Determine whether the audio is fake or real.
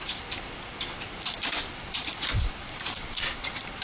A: real